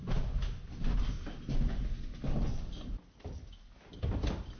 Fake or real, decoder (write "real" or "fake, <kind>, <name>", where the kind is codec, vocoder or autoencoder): real